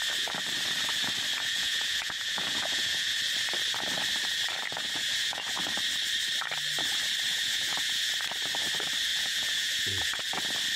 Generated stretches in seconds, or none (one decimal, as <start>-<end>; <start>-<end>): 1.3-3.2; 4.7-5.6; 7.3-8.1; 9.1-10.2